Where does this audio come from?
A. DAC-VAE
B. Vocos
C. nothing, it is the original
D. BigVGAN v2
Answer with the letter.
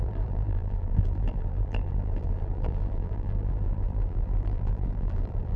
D